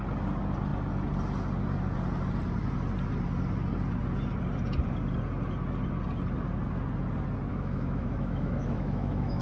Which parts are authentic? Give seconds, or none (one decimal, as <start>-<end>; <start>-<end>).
0.0-7.5